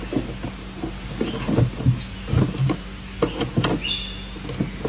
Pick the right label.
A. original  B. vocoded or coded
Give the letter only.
A